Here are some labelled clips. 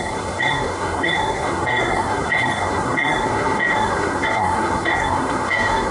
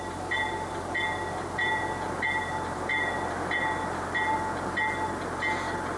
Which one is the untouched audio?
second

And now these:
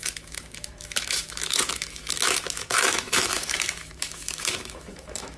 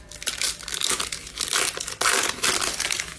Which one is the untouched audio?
second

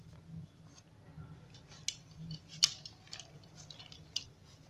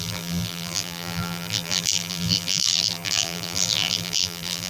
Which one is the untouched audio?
first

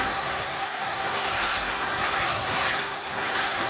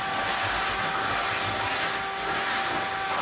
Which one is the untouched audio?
second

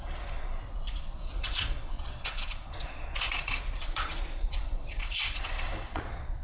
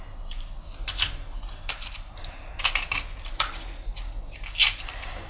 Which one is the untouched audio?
second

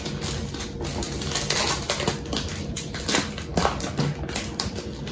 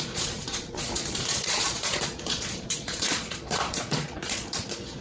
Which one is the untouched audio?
first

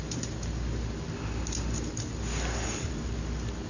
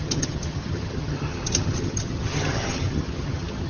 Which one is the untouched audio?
first